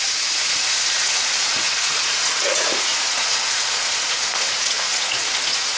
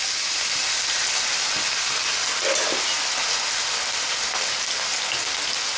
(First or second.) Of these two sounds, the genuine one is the second